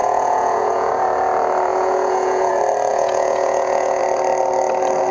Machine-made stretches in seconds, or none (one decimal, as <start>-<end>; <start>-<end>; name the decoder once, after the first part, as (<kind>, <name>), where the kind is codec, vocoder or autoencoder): 0.0-0.9 (vocoder, Vocos); 1.7-2.5; 2.9-4.0